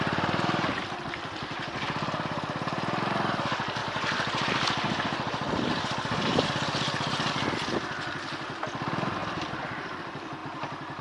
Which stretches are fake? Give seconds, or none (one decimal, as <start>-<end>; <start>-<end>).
3.8-7.3; 9.2-10.0